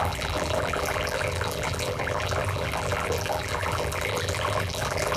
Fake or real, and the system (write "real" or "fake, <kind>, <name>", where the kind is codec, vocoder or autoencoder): fake, vocoder, BigVGAN v2